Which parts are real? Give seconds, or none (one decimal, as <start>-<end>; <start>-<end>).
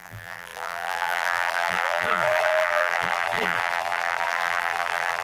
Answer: none